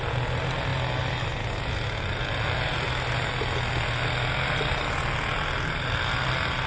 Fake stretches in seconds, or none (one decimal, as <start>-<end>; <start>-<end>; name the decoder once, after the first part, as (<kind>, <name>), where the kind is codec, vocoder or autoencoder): none